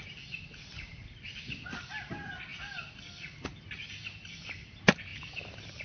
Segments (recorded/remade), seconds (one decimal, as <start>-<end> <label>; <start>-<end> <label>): 0.0-5.8 recorded